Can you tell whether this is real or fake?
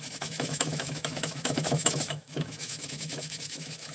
fake